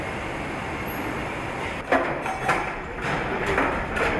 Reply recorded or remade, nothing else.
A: remade